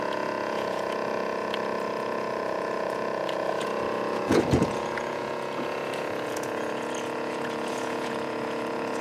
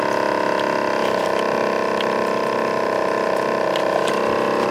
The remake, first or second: first